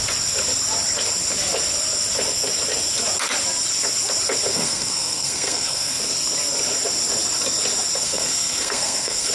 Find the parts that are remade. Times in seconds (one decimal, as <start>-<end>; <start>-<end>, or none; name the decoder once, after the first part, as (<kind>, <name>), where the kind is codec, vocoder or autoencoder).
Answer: 4.5-6.0 (codec, SNAC); 8.0-9.3